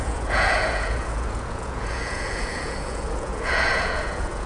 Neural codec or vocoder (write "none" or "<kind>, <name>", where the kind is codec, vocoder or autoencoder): vocoder, Vocos